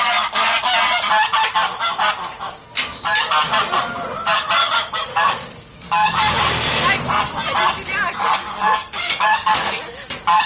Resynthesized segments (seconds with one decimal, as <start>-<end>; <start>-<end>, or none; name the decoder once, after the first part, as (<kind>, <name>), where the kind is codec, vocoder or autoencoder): 4.6-6.4 (codec, DAC); 8.2-10.1